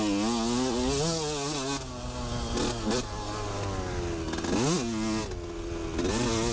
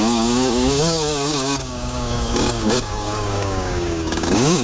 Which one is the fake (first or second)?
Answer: second